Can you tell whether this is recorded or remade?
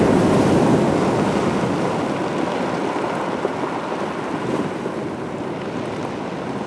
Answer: recorded